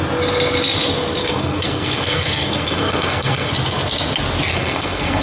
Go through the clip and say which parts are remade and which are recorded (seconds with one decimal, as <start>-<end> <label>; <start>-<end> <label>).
0.0-1.2 recorded; 1.2-3.5 remade; 3.5-4.5 recorded; 4.5-5.2 remade